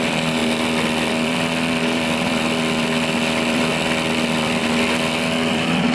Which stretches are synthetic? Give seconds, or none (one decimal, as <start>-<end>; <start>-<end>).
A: 0.0-4.6; 5.5-5.9